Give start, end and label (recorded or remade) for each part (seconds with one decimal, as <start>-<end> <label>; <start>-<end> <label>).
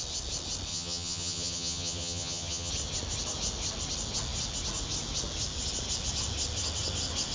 0.0-0.7 recorded; 0.7-2.7 remade; 2.7-7.3 recorded